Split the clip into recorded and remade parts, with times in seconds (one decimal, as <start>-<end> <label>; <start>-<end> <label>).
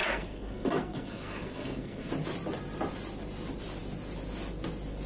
0.0-2.1 remade; 2.1-5.1 recorded